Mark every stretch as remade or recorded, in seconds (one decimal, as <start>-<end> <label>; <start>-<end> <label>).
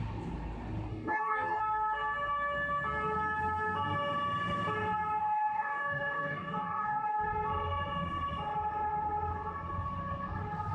0.0-0.9 recorded; 0.9-1.6 remade; 1.6-5.2 recorded; 5.2-7.2 remade; 7.2-10.7 recorded